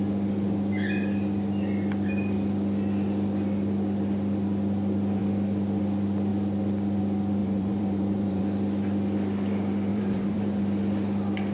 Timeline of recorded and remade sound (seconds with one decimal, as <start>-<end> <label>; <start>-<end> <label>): 0.0-7.4 recorded; 7.4-8.4 remade; 8.4-9.9 recorded; 9.9-10.6 remade; 10.6-11.5 recorded